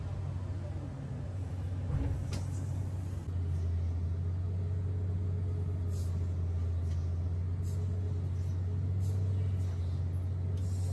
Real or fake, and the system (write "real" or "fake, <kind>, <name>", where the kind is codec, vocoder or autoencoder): real